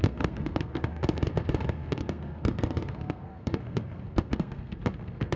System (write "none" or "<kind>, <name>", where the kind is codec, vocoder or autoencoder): codec, SNAC